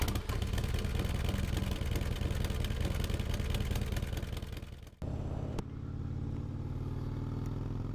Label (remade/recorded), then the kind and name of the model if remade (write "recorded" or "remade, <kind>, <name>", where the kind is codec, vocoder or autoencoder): recorded